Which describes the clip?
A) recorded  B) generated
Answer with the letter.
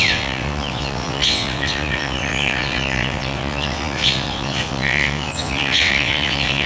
B